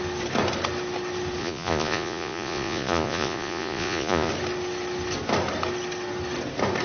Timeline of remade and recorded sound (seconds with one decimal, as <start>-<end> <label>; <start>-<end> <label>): 0.0-1.4 recorded; 1.4-4.3 remade; 4.3-6.8 recorded